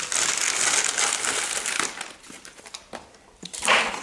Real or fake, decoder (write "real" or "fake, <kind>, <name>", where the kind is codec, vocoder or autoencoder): real